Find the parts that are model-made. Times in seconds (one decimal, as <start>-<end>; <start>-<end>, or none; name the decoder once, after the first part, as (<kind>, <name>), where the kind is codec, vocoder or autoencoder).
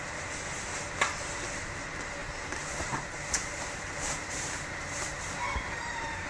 2.2-6.3 (vocoder, BigVGAN v2)